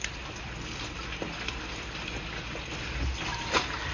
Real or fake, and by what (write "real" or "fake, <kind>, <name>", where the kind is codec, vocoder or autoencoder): real